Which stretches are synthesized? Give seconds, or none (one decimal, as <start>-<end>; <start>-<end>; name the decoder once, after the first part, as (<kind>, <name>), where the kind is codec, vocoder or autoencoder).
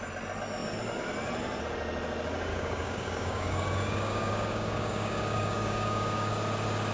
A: 2.5-6.3 (codec, DAC)